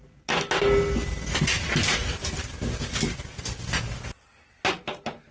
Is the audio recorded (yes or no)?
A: yes